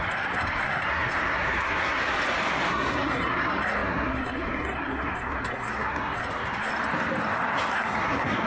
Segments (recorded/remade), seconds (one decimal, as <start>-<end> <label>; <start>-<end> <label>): 0.0-2.0 remade; 2.0-2.7 recorded; 2.7-6.7 remade; 6.7-7.7 recorded; 7.7-8.5 remade